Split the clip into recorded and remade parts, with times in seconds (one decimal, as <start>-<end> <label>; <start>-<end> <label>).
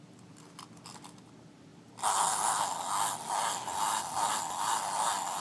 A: 0.0-5.4 recorded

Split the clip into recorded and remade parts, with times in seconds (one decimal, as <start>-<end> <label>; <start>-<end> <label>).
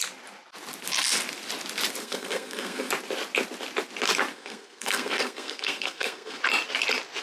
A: 0.0-2.0 recorded; 2.0-2.9 remade; 2.9-4.3 recorded; 4.3-6.4 remade; 6.4-7.2 recorded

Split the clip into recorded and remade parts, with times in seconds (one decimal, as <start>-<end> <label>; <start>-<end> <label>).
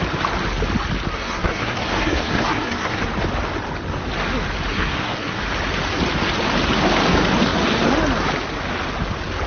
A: 0.0-1.1 recorded; 1.1-3.0 remade; 3.0-4.7 recorded; 4.7-5.4 remade; 5.4-9.5 recorded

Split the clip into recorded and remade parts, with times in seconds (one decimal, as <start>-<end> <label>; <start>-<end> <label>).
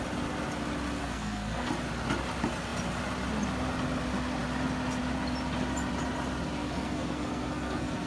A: 0.0-1.0 recorded; 1.0-1.7 remade; 1.7-6.6 recorded; 6.6-8.1 remade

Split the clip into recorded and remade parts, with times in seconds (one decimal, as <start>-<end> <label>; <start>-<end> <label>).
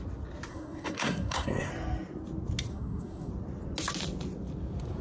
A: 0.0-0.5 recorded; 0.5-1.7 remade; 1.7-2.7 recorded; 2.7-3.3 remade; 3.3-5.0 recorded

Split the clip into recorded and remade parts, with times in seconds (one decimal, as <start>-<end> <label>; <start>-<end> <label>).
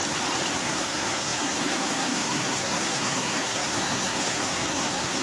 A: 0.0-0.6 recorded; 0.6-5.2 remade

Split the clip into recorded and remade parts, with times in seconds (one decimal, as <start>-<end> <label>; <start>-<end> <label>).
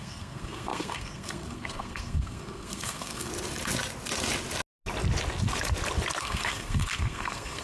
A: 0.0-3.3 remade; 3.3-6.2 recorded; 6.2-7.6 remade